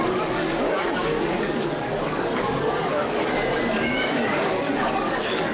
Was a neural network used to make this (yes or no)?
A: yes